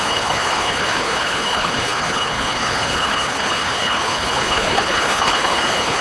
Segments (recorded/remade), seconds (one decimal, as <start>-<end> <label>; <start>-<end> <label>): 0.0-6.0 remade